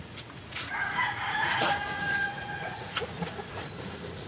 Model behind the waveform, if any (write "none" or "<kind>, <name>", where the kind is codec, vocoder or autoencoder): vocoder, Vocos